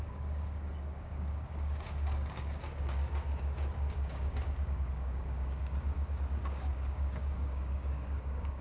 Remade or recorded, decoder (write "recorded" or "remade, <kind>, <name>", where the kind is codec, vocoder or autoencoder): remade, codec, DAC